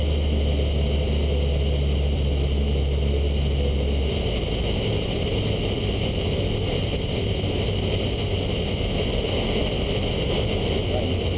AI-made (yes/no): no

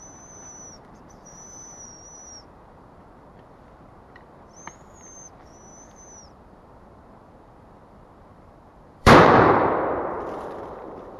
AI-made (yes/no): yes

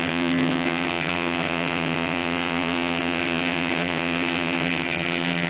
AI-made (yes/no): yes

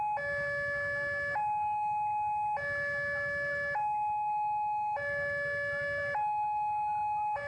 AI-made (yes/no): no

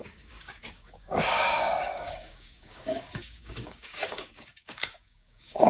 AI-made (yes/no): yes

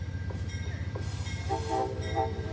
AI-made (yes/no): yes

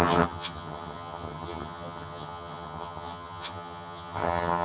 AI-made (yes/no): yes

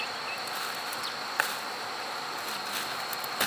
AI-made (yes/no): no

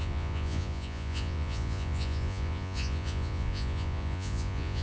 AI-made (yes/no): yes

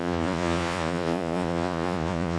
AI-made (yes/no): yes